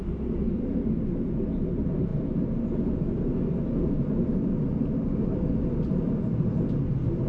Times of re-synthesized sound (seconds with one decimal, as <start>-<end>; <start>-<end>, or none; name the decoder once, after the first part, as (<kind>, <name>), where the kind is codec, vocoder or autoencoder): none